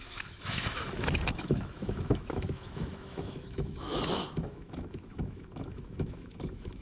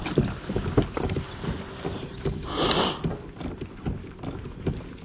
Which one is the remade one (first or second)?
first